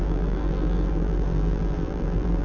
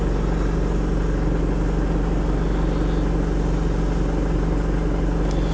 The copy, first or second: first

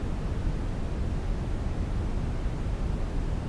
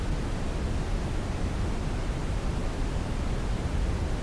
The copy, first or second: second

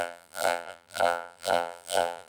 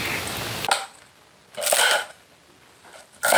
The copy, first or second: first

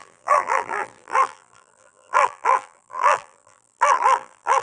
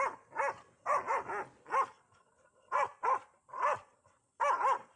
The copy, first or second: first